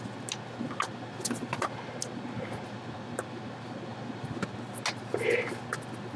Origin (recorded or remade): recorded